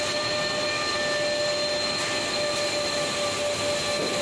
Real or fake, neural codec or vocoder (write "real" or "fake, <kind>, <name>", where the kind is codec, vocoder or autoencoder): real